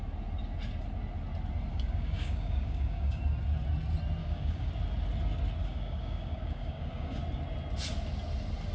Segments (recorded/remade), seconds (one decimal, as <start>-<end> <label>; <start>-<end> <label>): 0.0-1.7 recorded; 1.7-3.2 remade; 3.2-4.2 recorded; 4.2-4.7 remade; 4.7-5.6 recorded; 5.6-7.2 remade; 7.2-8.7 recorded